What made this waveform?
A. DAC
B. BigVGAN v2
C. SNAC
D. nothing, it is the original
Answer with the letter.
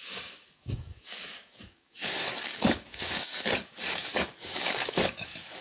A